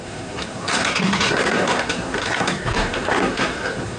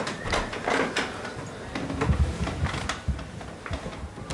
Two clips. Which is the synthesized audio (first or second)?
first